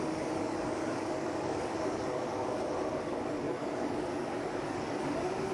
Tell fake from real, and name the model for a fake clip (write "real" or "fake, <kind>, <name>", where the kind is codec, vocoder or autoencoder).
fake, codec, DAC